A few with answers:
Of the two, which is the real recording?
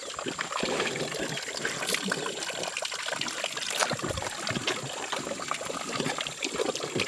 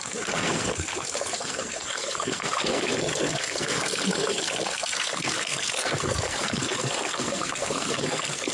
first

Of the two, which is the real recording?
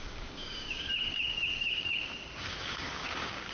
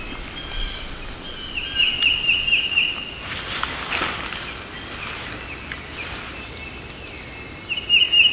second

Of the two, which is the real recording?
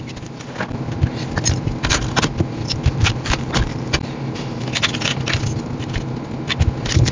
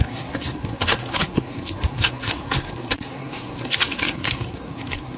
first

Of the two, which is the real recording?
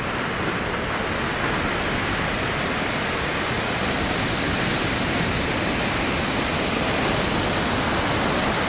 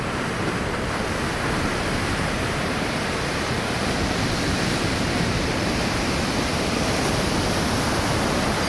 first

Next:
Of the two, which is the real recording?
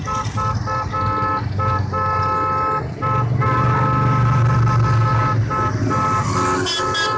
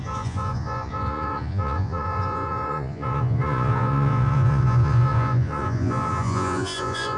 first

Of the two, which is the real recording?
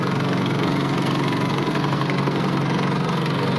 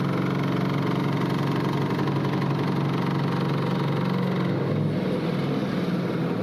second